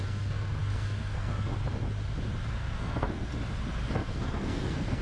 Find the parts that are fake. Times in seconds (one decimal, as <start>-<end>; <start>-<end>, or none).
0.0-1.5; 2.5-3.3; 3.9-5.0